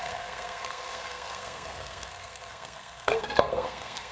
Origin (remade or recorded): remade